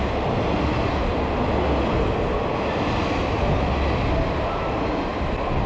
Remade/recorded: recorded